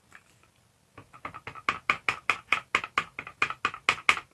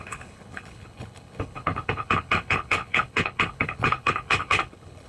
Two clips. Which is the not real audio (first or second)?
second